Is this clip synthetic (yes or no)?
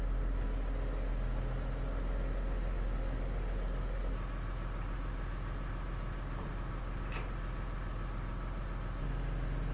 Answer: no